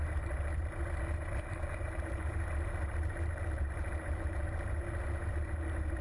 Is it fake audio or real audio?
fake